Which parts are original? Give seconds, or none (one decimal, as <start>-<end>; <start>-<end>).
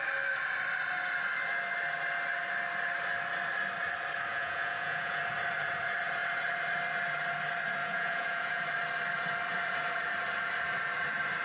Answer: 0.0-4.3; 5.2-7.8; 8.6-11.4